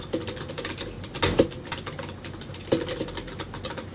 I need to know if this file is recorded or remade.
recorded